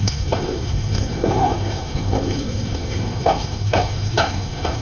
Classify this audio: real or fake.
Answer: fake